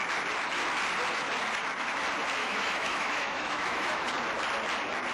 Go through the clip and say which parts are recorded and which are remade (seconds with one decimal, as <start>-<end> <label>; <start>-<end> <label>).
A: 0.0-2.4 recorded; 2.4-4.0 remade; 4.0-5.1 recorded